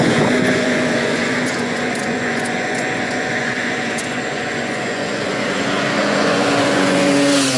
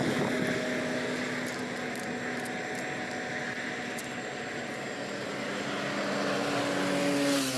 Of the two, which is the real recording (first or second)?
second